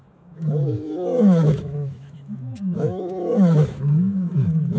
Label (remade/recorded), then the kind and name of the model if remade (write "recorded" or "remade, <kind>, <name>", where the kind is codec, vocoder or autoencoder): remade, autoencoder, DAC-VAE